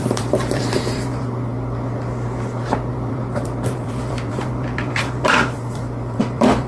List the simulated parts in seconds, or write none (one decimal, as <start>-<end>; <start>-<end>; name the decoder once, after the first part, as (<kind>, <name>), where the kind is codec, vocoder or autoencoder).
0.0-1.5 (vocoder, BigVGAN v2); 2.9-6.7